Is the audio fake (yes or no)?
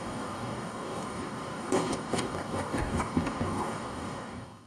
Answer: yes